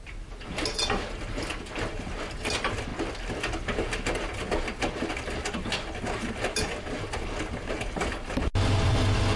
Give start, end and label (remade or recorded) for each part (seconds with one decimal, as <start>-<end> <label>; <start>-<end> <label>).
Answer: 0.0-9.4 recorded